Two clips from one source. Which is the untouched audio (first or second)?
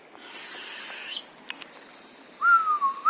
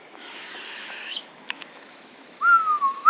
first